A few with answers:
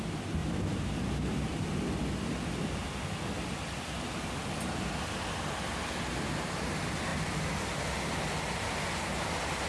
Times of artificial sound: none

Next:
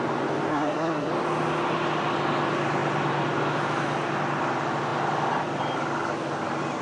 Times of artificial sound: 0.5-1.1 (codec, SNAC)